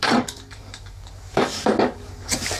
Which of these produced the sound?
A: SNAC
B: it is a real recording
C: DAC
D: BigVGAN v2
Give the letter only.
C